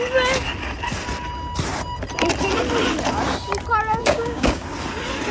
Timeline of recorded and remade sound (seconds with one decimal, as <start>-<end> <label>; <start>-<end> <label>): 0.0-4.0 recorded; 4.0-4.6 remade; 4.6-5.3 recorded